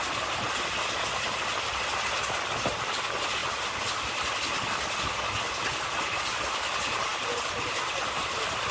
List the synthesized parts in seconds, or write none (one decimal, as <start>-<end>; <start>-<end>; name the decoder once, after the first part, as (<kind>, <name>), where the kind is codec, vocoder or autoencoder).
none